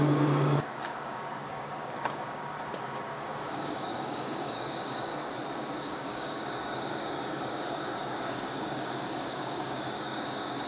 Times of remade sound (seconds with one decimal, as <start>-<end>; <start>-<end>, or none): 0.0-5.1; 5.8-10.7